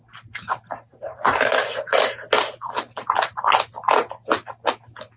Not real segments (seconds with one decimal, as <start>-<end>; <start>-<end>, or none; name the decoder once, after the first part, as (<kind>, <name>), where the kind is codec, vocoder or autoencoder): 0.9-3.4 (vocoder, BigVGAN v2)